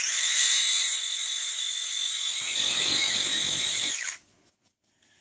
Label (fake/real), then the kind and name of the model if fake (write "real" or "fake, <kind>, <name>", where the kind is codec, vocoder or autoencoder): fake, autoencoder, DAC-VAE